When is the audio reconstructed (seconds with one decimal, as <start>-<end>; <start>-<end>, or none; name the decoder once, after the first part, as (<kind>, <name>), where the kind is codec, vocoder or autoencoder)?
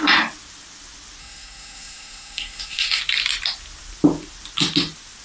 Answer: 1.2-3.0 (codec, SNAC)